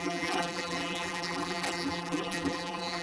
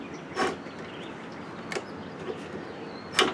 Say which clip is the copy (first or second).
first